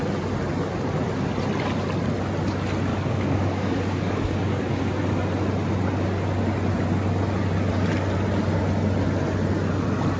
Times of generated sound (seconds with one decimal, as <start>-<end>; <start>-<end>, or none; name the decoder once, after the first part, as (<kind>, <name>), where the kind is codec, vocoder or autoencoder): 2.9-4.7 (codec, DAC)